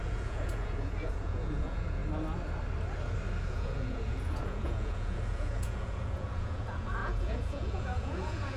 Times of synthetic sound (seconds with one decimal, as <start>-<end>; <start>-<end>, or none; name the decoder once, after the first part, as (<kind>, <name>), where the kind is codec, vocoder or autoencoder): 0.0-2.0 (vocoder, Vocos); 3.4-8.6